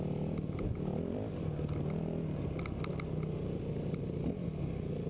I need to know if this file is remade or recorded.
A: recorded